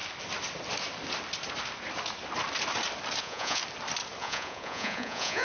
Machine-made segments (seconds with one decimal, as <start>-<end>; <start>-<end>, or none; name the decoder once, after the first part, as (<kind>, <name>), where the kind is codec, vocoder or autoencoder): 3.2-3.6 (vocoder, Vocos); 4.2-5.4